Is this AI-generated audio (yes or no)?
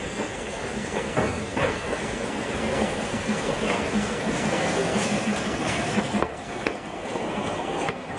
yes